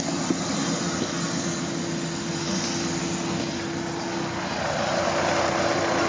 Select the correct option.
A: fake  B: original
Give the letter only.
B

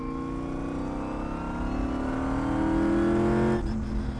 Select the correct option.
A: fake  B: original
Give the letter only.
B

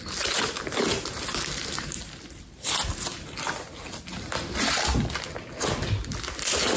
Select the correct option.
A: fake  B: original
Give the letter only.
B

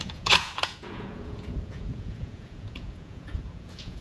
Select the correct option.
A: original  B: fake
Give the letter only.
B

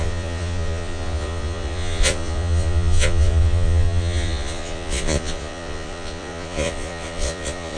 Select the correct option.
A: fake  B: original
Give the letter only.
A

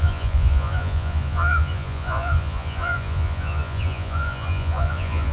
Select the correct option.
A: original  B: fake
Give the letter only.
B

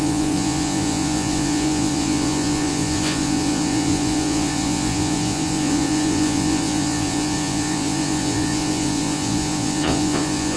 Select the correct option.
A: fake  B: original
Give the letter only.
A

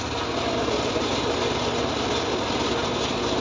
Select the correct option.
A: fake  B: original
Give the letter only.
B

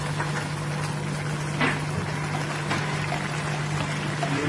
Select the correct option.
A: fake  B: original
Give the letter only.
B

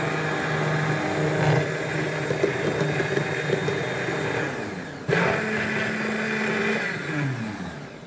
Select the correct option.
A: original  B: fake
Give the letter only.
A